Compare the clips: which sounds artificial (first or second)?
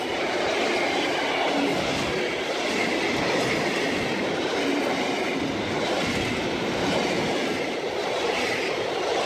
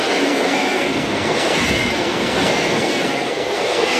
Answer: second